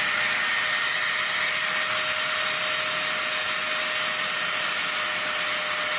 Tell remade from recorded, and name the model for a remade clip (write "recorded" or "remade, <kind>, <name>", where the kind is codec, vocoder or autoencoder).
recorded